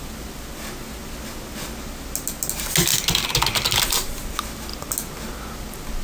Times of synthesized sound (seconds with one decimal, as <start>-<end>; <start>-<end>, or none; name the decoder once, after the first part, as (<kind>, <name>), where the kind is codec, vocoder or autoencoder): none